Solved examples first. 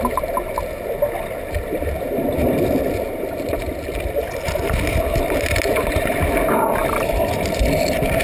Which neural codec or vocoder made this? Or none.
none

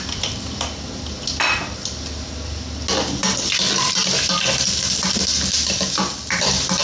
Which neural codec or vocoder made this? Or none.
none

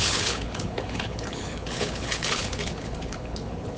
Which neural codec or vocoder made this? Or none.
codec, HILCodec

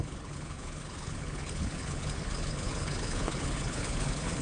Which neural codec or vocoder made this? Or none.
codec, HILCodec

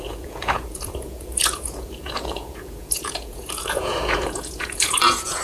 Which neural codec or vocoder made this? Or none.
vocoder, Vocos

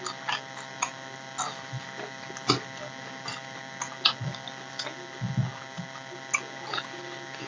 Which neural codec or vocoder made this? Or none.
none